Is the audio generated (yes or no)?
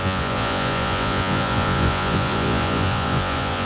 yes